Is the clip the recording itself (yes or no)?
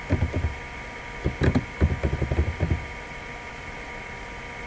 yes